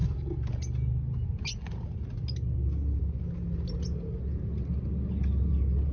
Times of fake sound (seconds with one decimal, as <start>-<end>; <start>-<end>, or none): none

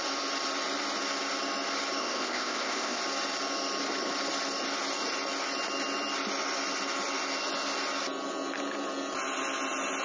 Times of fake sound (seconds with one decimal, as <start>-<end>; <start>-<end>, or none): 2.0-3.0

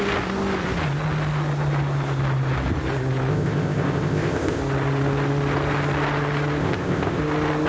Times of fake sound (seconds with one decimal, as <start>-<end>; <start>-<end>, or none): 3.3-4.6; 6.6-7.2

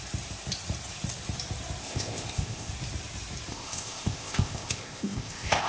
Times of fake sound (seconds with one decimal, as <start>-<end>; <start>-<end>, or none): 1.8-2.7; 3.5-5.7

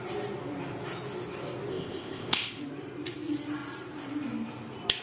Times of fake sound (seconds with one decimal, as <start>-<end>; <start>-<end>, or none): 1.7-2.6

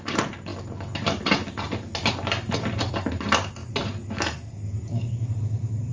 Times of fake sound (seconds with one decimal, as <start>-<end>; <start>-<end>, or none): none